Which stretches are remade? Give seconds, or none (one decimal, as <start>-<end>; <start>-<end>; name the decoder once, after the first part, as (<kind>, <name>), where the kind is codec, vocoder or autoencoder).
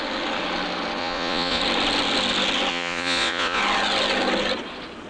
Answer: 1.0-1.6 (vocoder, Vocos); 2.7-3.6